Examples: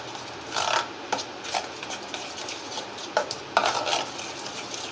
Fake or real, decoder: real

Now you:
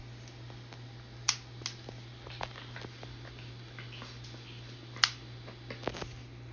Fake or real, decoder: real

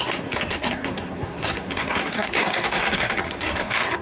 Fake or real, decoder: fake, codec, SNAC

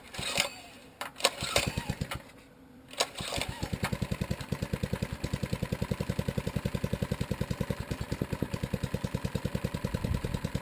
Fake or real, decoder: fake, vocoder, BigVGAN v2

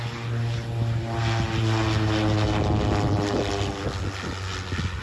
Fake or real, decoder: real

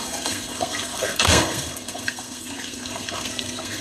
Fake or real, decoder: fake, codec, SNAC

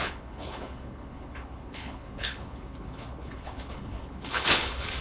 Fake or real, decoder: fake, codec, HILCodec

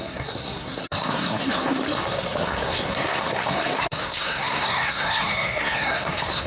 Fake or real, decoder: fake, codec, SNAC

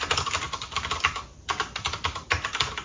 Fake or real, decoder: real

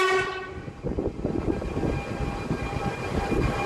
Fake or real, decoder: real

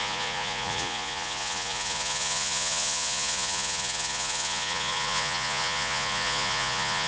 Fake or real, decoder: fake, vocoder, Vocos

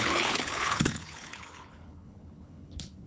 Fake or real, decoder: fake, codec, HILCodec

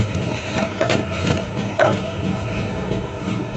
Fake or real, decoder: fake, codec, SNAC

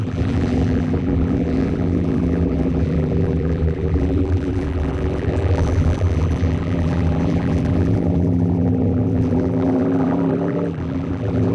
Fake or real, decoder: fake, vocoder, BigVGAN v2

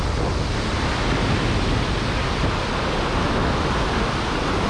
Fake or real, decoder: real